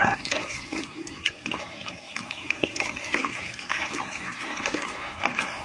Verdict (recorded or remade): remade